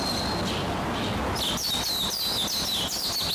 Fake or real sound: real